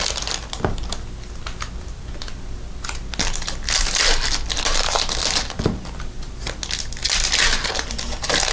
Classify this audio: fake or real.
real